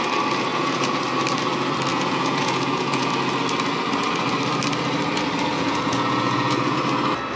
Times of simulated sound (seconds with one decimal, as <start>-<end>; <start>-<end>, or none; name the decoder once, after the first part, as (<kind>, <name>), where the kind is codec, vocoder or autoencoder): 0.5-1.0 (vocoder, Vocos); 1.9-3.1; 5.5-6.8